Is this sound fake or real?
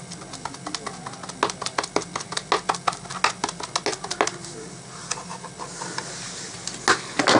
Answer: real